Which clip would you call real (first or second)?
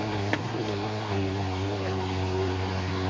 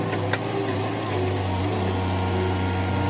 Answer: second